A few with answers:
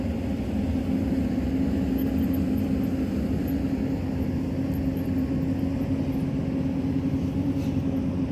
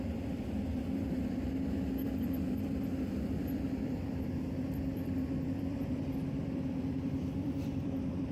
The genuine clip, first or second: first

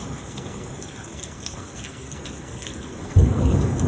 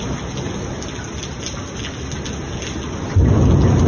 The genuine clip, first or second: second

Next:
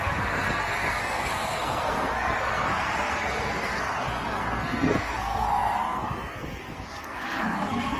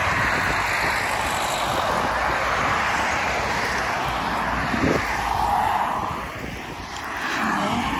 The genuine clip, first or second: second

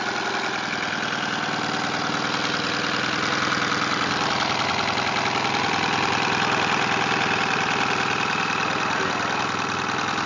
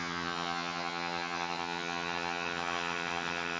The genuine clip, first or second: first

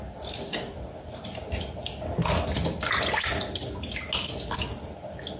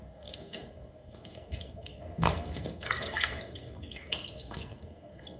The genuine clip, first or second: first